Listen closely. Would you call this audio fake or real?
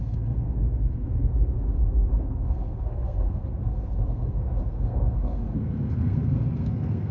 fake